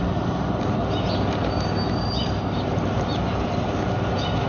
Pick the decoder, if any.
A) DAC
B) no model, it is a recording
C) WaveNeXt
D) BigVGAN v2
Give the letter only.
B